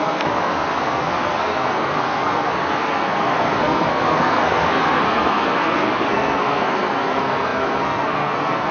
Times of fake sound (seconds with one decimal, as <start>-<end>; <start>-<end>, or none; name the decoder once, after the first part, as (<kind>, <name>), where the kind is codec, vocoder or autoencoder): 0.0-8.7 (codec, SNAC)